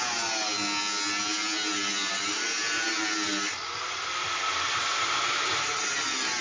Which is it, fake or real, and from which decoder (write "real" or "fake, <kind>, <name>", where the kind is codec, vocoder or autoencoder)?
real